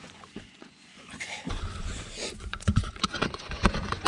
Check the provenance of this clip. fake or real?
fake